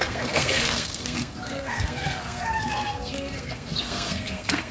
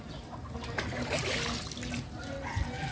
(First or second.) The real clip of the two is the second